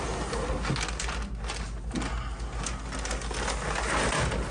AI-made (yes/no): no